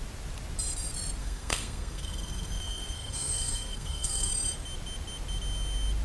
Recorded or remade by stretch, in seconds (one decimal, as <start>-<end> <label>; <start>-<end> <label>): 0.0-1.2 recorded; 1.2-4.3 remade; 4.3-6.0 recorded